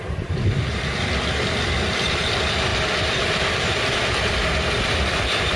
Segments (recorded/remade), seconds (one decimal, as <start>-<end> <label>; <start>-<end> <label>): 0.0-5.6 recorded